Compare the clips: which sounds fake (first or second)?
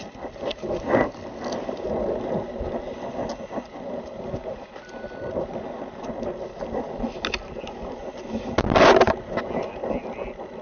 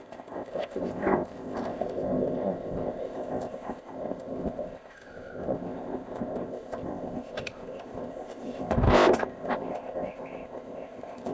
second